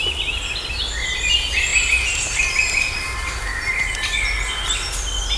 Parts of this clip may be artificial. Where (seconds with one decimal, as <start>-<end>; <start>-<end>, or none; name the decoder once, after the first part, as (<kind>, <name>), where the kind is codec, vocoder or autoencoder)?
none